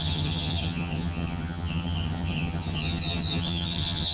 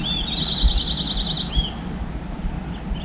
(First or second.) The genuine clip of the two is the second